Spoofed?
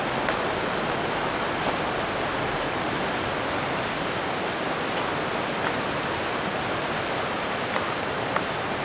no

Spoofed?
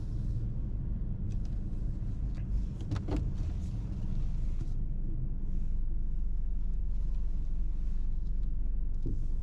no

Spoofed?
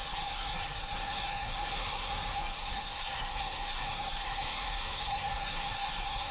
yes